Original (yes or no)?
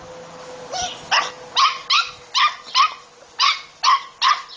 yes